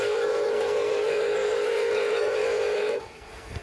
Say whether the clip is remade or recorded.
remade